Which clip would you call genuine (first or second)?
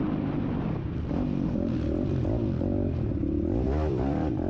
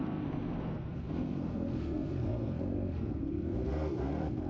first